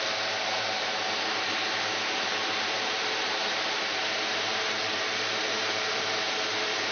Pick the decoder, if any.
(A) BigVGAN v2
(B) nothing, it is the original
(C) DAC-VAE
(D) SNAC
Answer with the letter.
A